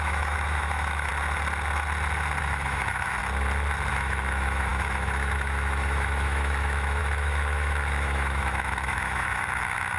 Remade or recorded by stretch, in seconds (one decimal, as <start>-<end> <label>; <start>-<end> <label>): 0.0-1.1 remade; 1.1-2.4 recorded; 2.4-3.2 remade; 3.2-3.9 recorded; 3.9-10.0 remade